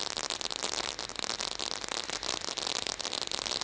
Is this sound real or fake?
real